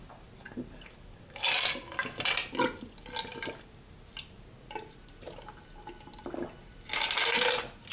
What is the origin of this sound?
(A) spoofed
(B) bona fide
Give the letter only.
B